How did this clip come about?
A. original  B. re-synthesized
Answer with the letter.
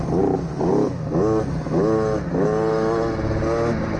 A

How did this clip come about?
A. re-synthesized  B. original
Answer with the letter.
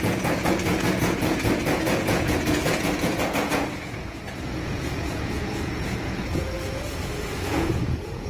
A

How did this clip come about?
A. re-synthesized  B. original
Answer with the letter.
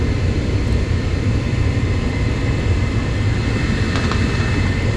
B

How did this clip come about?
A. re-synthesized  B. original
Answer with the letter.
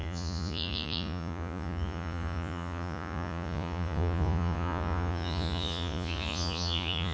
A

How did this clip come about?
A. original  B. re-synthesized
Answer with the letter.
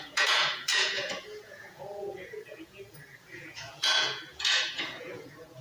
B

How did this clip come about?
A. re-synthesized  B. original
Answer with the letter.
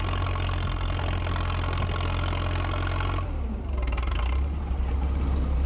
B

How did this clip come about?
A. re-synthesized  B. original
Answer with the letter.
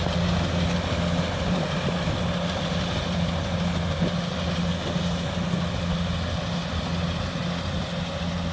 B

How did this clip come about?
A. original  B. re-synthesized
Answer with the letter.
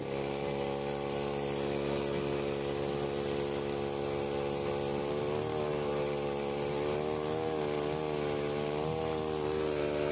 A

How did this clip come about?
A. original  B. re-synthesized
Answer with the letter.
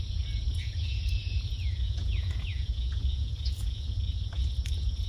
B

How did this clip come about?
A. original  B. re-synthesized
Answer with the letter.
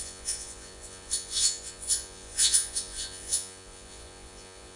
B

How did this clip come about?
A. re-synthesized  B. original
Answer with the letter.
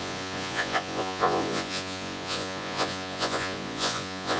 A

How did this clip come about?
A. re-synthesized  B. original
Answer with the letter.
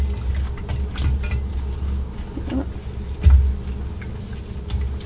B